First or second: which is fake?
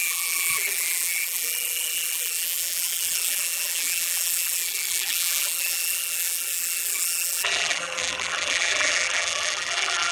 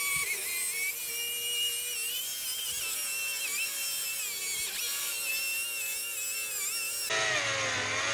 first